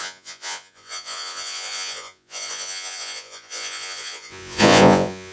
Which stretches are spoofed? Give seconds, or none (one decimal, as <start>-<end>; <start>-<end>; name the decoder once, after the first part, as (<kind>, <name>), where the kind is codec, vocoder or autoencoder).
0.0-5.3 (vocoder, Vocos)